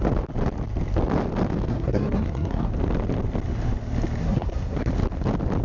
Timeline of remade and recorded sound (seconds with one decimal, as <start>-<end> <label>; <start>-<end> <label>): 0.0-1.7 recorded; 1.7-2.7 remade; 2.7-4.2 recorded; 4.2-4.9 remade; 4.9-5.6 recorded